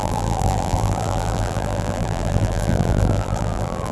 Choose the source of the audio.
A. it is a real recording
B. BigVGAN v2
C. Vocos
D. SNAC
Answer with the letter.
B